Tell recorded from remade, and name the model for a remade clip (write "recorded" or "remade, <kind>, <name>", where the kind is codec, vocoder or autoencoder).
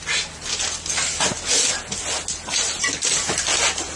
recorded